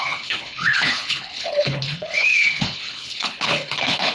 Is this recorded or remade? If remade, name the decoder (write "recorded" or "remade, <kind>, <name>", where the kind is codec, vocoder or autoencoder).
remade, codec, HILCodec